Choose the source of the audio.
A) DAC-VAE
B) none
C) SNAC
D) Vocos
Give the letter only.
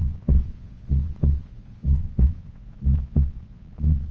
D